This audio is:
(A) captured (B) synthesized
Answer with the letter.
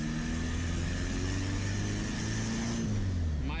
A